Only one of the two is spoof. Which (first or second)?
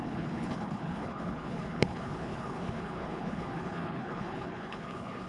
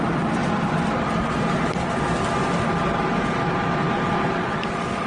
first